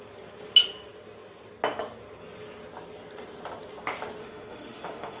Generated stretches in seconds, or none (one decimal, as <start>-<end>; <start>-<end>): 4.2-5.2